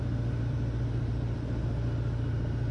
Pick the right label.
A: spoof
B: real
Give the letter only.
B